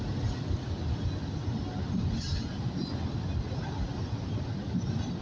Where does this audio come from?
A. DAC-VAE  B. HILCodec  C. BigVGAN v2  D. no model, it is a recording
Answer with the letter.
D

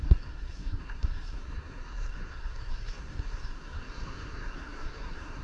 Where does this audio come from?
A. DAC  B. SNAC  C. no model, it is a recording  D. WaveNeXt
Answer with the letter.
B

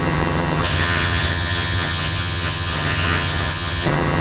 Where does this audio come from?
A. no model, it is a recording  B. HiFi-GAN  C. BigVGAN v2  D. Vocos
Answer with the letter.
B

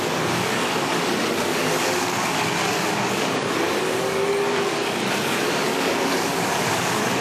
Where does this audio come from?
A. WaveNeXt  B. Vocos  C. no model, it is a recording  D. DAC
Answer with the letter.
D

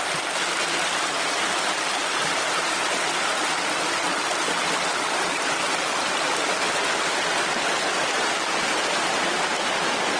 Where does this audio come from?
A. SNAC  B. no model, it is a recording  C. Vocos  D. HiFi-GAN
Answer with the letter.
B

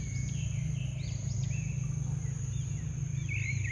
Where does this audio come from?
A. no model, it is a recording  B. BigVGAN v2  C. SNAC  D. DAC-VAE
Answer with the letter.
A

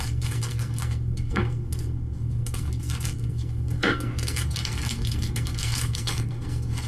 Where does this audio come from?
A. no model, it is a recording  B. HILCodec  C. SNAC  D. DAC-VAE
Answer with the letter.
C